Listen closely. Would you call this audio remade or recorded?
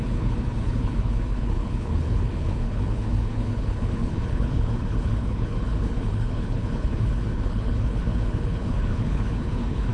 remade